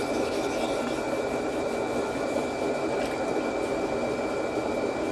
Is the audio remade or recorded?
recorded